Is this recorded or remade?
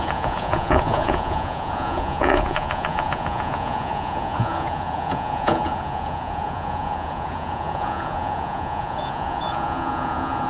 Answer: remade